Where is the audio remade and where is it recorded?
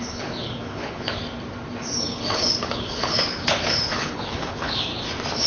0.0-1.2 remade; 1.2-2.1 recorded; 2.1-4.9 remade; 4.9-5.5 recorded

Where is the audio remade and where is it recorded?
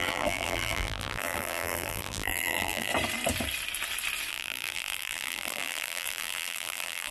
0.0-2.9 remade; 2.9-4.3 recorded; 4.3-7.1 remade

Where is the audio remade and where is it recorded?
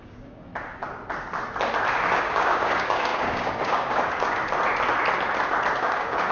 0.0-0.5 remade; 0.5-2.2 recorded; 2.2-4.4 remade; 4.4-5.8 recorded; 5.8-6.3 remade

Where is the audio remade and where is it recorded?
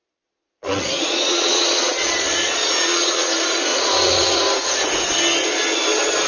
0.0-3.3 remade; 3.3-3.7 recorded; 3.7-4.4 remade; 4.4-6.3 recorded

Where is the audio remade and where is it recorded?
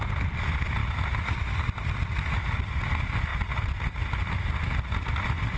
0.0-5.6 recorded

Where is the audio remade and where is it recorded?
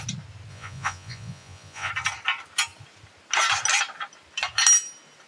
0.0-0.5 recorded; 0.5-1.9 remade; 1.9-5.3 recorded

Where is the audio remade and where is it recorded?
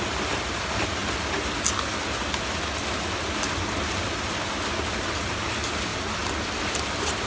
0.0-7.3 recorded